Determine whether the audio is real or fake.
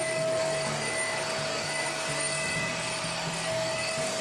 fake